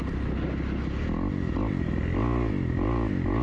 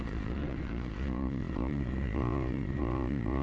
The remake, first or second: second